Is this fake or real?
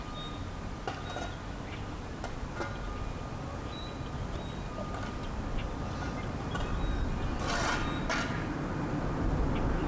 real